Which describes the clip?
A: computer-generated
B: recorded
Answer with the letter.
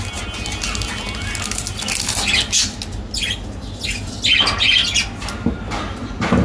B